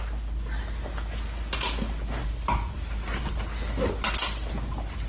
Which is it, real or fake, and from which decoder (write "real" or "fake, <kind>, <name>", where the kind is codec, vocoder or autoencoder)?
real